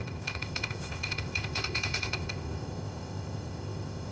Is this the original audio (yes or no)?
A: no